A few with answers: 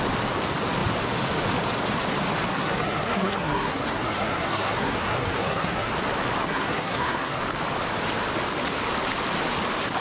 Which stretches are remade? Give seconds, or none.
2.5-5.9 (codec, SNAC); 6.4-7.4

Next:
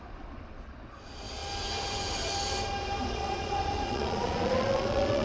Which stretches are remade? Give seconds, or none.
0.0-1.4 (vocoder, Vocos); 3.0-5.2

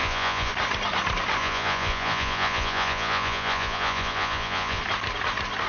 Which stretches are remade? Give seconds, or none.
0.0-0.5 (vocoder, Vocos); 1.4-4.8